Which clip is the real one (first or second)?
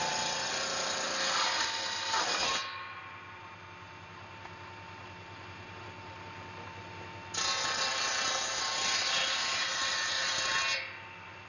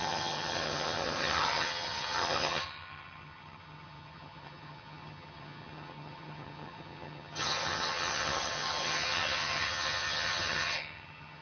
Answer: first